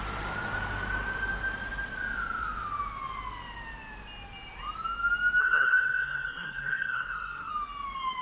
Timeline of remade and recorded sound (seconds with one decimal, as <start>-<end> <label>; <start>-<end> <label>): 0.0-5.4 recorded; 5.4-7.5 remade; 7.5-8.2 recorded

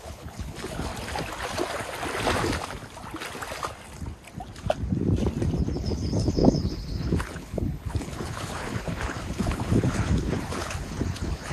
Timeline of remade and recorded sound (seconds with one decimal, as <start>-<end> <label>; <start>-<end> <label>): 0.0-0.9 remade; 0.9-5.8 recorded; 5.8-11.5 remade